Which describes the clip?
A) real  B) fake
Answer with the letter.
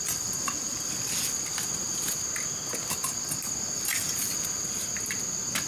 A